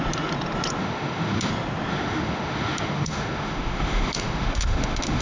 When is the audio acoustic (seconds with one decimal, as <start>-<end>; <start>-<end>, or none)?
0.0-0.8; 1.5-1.9